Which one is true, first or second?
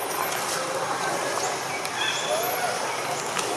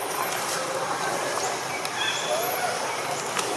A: first